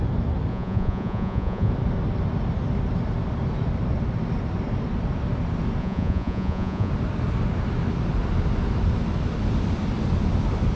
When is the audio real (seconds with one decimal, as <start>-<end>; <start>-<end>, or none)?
0.0-0.5; 1.7-5.8; 6.9-10.8